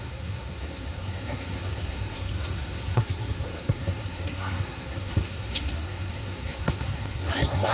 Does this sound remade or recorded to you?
remade